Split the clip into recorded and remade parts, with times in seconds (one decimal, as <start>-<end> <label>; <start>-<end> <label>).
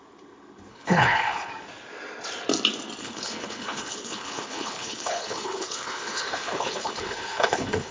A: 0.0-0.7 recorded; 0.7-1.5 remade; 1.5-3.0 recorded; 3.0-7.9 remade